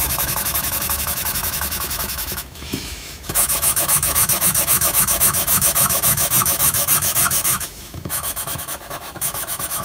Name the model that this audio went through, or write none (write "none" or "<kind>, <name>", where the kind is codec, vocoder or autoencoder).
autoencoder, DAC-VAE